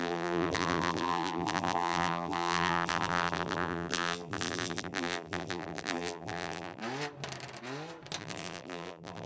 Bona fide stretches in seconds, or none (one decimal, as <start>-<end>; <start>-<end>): 6.8-8.2